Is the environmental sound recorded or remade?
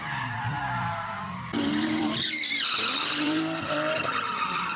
remade